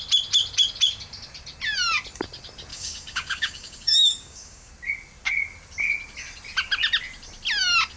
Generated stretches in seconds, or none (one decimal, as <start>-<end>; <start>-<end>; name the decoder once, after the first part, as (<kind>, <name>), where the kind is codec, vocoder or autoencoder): 2.7-4.7 (codec, DAC)

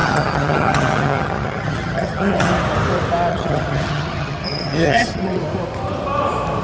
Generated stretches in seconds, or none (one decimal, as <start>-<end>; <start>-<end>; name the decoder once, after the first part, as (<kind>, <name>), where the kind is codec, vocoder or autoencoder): 0.0-2.5 (vocoder, HiFi-GAN); 3.3-5.4

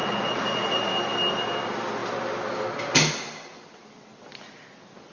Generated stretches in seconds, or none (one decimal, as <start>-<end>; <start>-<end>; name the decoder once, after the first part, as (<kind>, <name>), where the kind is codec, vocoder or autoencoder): 0.0-0.9 (vocoder, Vocos)